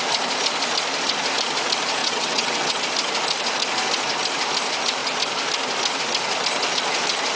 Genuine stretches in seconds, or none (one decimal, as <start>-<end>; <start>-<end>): 0.0-2.0; 2.8-7.4